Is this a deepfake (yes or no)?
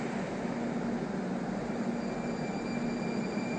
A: no